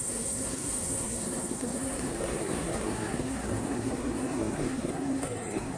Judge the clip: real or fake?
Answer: fake